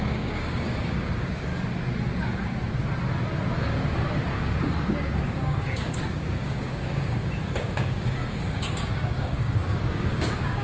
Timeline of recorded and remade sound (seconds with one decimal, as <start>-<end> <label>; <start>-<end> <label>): 0.0-1.5 remade; 1.5-4.3 recorded; 4.3-10.6 remade